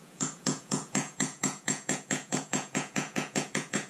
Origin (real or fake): fake